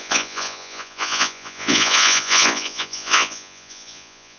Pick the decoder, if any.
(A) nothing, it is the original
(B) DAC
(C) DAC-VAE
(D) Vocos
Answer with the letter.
D